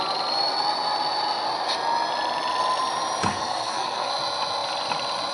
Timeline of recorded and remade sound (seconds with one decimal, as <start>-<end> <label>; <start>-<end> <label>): 0.0-3.3 recorded; 3.3-4.1 remade; 4.1-5.3 recorded